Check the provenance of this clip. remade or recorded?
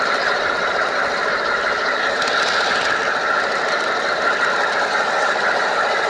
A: recorded